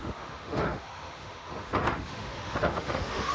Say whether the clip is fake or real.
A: fake